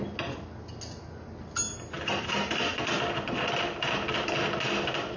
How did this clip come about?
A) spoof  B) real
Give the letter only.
B